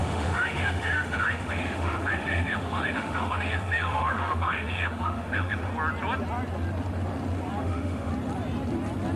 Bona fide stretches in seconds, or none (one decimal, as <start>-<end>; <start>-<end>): 5.7-7.6; 8.1-9.2